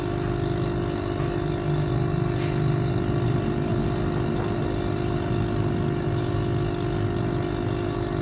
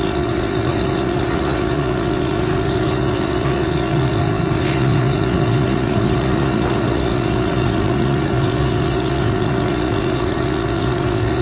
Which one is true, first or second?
first